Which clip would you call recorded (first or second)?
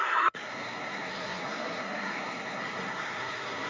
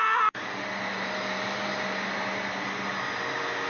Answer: second